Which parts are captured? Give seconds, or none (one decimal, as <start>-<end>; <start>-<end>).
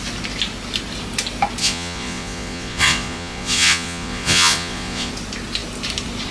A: 0.0-1.6; 5.1-6.3